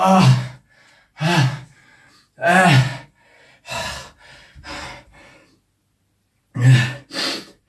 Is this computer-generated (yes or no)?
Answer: no